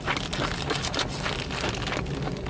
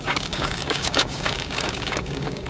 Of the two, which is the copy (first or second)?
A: second